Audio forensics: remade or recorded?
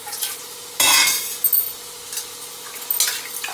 recorded